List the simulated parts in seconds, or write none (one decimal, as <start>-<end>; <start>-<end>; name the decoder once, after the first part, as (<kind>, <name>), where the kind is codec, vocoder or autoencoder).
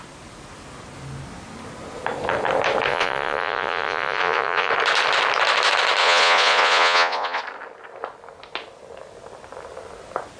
2.9-4.7 (vocoder, Vocos); 6.0-7.4